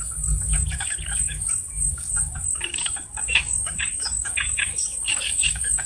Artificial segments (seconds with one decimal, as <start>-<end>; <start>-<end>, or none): 0.0-5.9